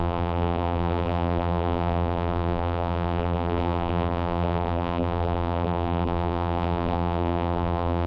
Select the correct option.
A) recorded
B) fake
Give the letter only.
B